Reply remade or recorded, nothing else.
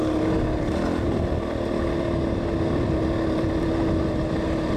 recorded